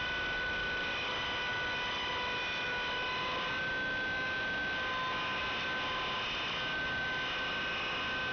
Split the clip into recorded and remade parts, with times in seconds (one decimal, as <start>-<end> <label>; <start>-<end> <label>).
0.0-8.3 recorded